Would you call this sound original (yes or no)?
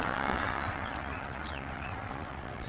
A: no